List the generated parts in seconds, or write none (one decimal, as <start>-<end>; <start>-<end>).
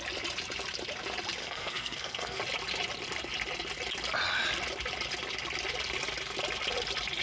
1.4-2.4